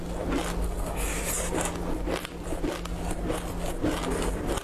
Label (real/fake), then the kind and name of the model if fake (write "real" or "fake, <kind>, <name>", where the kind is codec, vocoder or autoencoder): real